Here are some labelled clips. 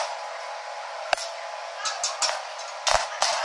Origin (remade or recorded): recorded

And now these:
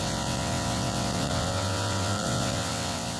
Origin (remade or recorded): remade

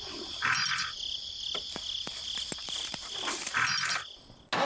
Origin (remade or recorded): recorded